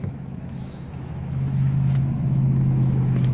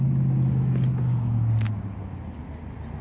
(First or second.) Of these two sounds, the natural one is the second